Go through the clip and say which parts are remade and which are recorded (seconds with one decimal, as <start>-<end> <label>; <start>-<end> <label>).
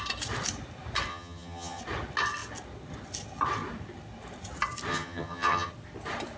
0.0-1.1 recorded; 1.1-1.8 remade; 1.8-4.9 recorded; 4.9-5.7 remade; 5.7-6.4 recorded